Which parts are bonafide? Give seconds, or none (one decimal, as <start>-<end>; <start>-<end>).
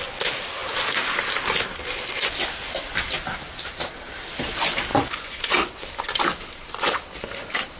0.0-4.9; 5.8-7.8